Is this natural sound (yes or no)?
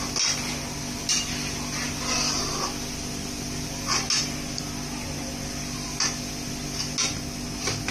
yes